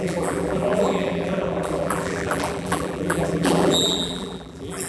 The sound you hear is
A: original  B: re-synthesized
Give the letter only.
B